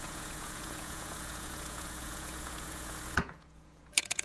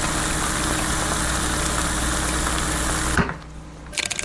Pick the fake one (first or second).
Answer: first